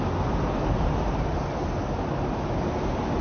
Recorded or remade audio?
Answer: recorded